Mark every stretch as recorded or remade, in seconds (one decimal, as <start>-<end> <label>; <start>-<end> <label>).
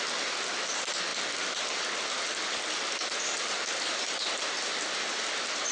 0.0-5.7 recorded